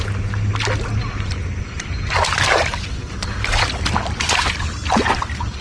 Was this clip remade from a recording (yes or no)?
no